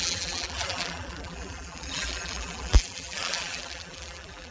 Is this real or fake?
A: fake